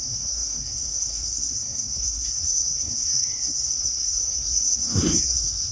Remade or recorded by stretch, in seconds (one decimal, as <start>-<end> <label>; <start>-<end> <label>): 0.0-5.7 remade